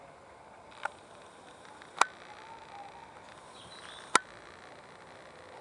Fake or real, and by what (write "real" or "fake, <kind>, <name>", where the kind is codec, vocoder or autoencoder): real